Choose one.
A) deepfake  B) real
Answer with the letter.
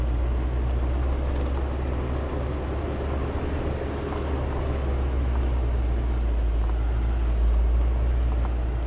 B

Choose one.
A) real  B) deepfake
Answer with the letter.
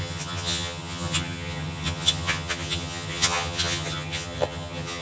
B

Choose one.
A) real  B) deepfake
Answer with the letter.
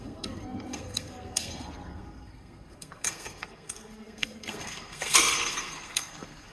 B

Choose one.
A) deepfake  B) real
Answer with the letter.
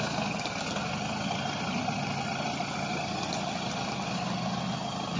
B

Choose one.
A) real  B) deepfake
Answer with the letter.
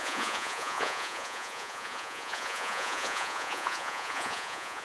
B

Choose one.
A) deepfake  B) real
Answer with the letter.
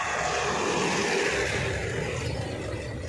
B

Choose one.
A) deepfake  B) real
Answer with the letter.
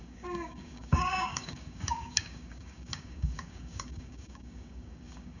A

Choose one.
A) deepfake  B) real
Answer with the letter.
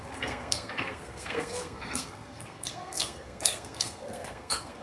A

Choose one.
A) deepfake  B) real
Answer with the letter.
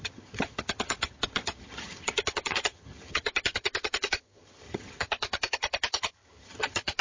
A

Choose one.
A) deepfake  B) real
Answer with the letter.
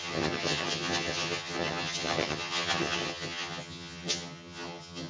A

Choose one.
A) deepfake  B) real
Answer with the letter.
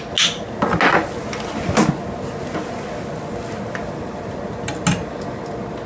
B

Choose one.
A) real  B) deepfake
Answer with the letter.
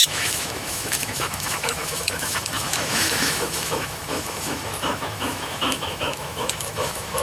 B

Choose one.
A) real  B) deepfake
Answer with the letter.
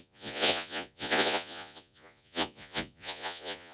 B